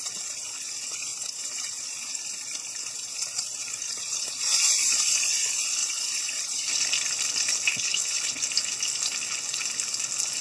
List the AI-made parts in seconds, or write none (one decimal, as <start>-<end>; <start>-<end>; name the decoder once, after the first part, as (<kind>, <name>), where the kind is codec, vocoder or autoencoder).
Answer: 7.7-8.4 (codec, HILCodec)